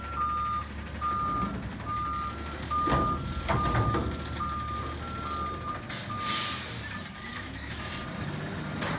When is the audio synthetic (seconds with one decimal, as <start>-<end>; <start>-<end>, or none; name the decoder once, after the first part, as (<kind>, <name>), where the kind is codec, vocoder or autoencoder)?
7.3-7.9 (autoencoder, DAC-VAE)